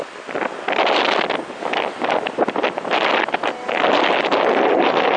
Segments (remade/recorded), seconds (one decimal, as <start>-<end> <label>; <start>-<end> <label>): 0.0-5.2 recorded

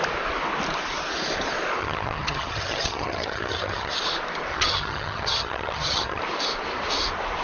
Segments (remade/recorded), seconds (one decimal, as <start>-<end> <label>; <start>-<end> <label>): 0.0-1.8 recorded; 1.8-3.9 remade; 3.9-4.5 recorded; 4.5-6.2 remade; 6.2-7.4 recorded

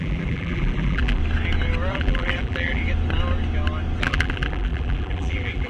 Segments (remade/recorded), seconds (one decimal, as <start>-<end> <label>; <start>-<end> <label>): 0.0-1.2 remade; 1.2-1.9 recorded; 1.9-2.8 remade; 2.8-4.0 recorded; 4.0-5.7 remade